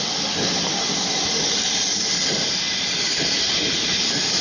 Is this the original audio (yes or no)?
yes